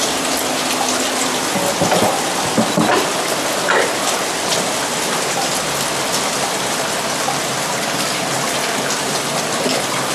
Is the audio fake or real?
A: real